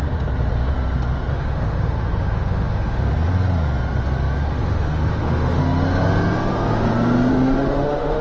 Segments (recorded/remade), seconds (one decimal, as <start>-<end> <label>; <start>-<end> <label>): 0.0-1.3 recorded; 1.3-3.1 remade; 3.1-4.6 recorded; 4.6-5.6 remade; 5.6-7.3 recorded; 7.3-8.2 remade